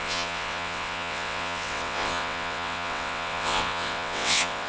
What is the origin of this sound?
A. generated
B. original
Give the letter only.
A